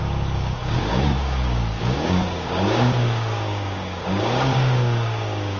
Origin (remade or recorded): remade